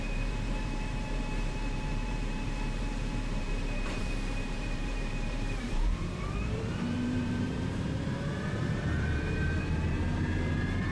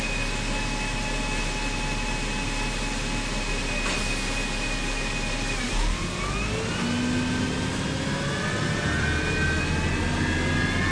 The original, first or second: second